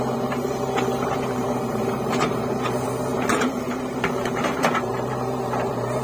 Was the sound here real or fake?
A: fake